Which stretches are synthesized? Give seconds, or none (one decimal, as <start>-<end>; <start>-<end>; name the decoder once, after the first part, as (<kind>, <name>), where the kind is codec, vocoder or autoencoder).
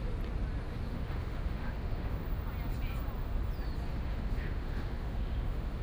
0.9-2.2 (autoencoder, DAC-VAE); 3.9-5.8